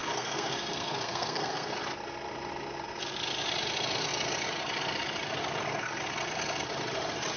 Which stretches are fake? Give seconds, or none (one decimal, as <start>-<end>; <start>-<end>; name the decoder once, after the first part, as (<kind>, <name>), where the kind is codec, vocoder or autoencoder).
0.0-1.7 (codec, SNAC)